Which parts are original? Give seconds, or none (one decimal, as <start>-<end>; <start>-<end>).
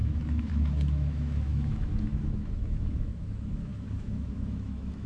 none